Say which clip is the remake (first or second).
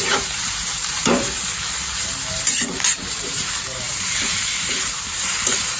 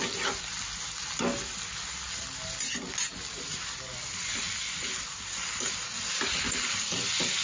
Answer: first